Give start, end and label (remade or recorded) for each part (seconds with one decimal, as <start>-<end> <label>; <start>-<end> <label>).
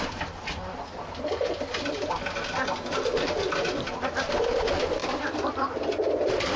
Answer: 0.0-6.6 recorded